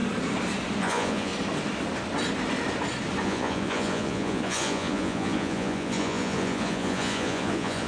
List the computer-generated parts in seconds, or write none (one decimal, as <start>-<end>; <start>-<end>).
0.8-1.3; 3.2-7.9